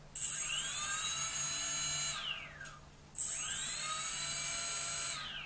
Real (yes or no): yes